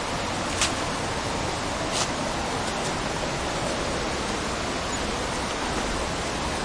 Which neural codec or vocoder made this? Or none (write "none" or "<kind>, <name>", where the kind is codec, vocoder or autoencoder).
none